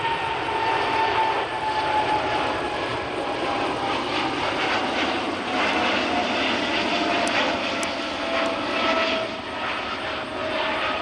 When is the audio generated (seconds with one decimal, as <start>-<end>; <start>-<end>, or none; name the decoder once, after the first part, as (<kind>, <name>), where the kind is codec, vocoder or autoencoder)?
10.4-11.0 (vocoder, BigVGAN v2)